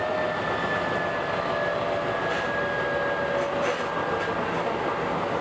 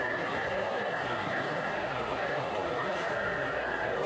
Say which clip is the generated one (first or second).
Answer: second